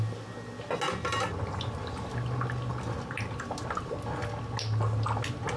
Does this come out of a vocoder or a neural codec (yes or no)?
no